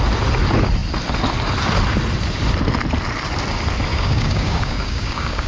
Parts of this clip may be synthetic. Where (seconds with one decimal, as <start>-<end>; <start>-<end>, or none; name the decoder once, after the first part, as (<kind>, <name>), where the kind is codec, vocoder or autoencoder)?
3.9-5.5 (codec, DAC)